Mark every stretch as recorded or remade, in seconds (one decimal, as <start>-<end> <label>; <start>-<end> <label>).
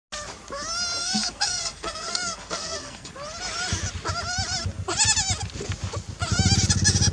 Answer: 0.0-1.0 recorded; 1.0-3.1 remade; 3.1-7.1 recorded